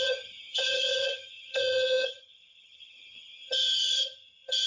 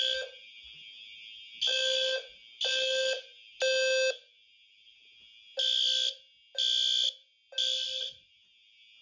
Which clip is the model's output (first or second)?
first